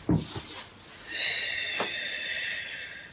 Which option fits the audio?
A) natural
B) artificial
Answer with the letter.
A